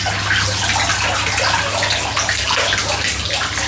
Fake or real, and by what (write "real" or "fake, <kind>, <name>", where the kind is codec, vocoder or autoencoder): real